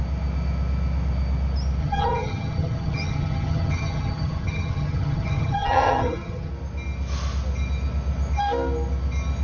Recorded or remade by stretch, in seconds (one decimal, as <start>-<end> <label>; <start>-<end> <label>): 0.0-1.8 recorded; 1.8-6.5 remade; 6.5-9.4 recorded

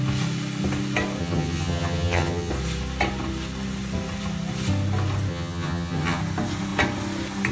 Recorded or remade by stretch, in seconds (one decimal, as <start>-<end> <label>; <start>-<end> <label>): 0.0-1.2 recorded; 1.2-2.5 remade; 2.5-5.3 recorded; 5.3-6.2 remade; 6.2-7.5 recorded

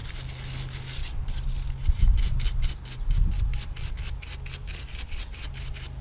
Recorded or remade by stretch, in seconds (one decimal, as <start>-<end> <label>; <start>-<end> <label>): 0.0-6.0 recorded